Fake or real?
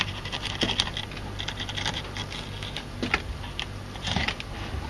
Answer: real